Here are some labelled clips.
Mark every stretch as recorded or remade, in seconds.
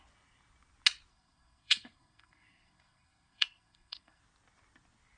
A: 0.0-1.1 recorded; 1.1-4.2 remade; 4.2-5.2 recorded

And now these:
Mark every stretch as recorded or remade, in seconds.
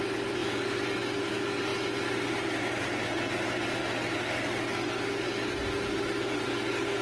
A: 0.0-7.0 recorded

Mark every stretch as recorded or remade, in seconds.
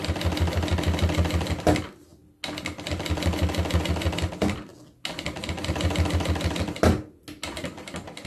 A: 0.0-8.3 recorded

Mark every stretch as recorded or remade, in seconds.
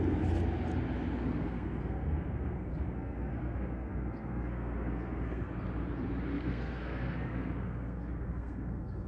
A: 0.0-1.2 recorded; 1.2-5.6 remade; 5.6-6.3 recorded; 6.3-9.1 remade